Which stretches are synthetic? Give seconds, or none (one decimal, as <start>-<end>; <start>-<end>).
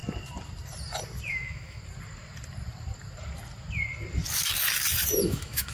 1.3-1.8; 5.2-5.7